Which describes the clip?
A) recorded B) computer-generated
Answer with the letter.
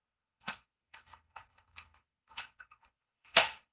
B